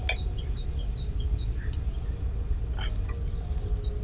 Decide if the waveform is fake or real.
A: real